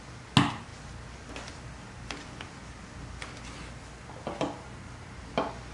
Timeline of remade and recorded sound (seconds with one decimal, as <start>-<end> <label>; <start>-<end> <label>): 0.0-5.7 recorded